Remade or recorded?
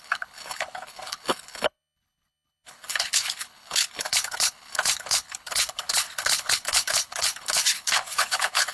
remade